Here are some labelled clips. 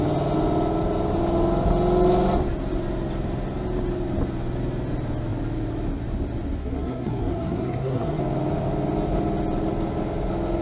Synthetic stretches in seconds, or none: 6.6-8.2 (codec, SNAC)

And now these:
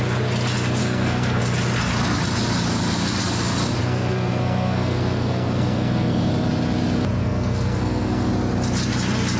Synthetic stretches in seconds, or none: 0.8-1.4 (codec, SNAC); 3.8-6.3; 7.2-8.3

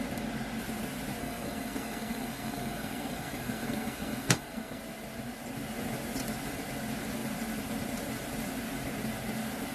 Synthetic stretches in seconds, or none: 1.2-4.8 (codec, SNAC)